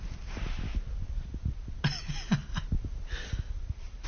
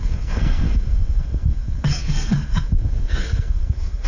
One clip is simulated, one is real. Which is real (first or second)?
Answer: first